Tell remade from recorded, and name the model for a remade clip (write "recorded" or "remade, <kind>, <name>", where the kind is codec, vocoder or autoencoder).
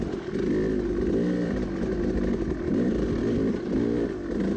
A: recorded